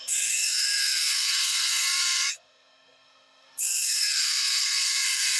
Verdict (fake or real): fake